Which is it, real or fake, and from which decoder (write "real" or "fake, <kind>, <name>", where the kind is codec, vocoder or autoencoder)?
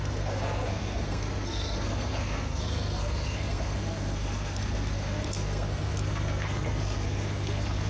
fake, codec, SNAC